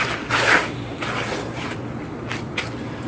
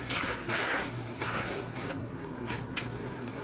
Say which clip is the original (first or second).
first